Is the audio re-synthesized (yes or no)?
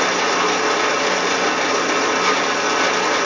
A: no